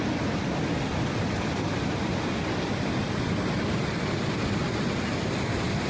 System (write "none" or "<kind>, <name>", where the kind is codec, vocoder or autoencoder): none